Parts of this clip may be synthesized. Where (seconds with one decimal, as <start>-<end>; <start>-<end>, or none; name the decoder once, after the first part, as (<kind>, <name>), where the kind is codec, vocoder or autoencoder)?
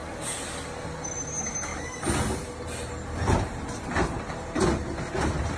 none